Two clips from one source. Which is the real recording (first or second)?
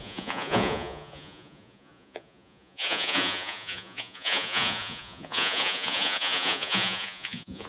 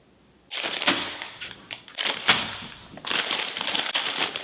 second